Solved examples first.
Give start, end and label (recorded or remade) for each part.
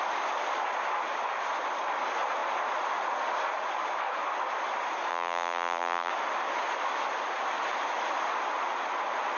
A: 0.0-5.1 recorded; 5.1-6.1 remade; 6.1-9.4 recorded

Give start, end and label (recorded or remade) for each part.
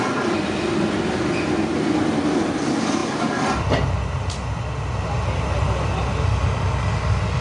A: 0.0-7.4 recorded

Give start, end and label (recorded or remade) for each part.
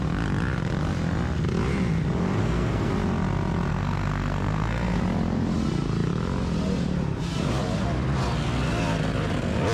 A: 0.0-2.4 recorded; 2.4-2.9 remade; 2.9-3.7 recorded; 3.7-5.0 remade; 5.0-9.7 recorded